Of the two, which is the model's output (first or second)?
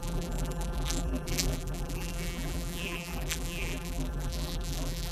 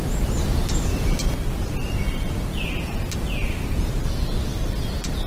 first